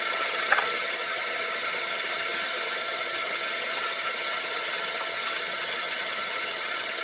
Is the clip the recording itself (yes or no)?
no